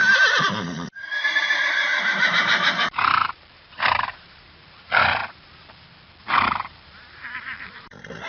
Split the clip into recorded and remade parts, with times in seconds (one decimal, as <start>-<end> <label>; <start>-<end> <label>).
0.0-1.1 recorded; 1.1-5.2 remade; 5.2-6.5 recorded; 6.5-8.3 remade

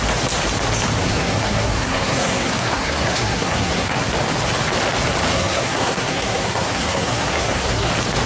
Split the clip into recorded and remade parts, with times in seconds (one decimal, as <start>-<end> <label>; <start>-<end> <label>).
0.0-1.0 recorded; 1.0-4.0 remade; 4.0-5.3 recorded; 5.3-7.9 remade; 7.9-8.3 recorded

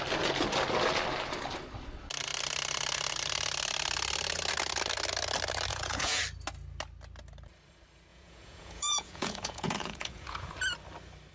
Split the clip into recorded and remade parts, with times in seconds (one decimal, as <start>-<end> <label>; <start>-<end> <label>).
0.0-5.7 recorded; 5.7-6.2 remade; 6.2-8.1 recorded; 8.1-10.5 remade; 10.5-11.3 recorded

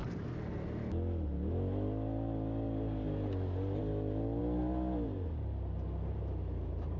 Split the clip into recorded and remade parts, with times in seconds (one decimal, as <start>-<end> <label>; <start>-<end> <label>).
0.0-7.0 recorded